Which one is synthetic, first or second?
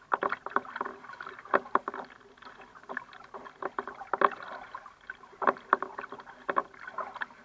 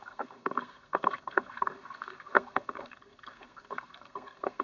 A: second